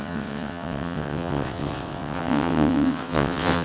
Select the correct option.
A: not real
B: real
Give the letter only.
A